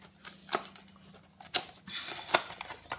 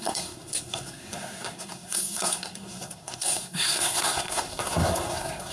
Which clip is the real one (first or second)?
first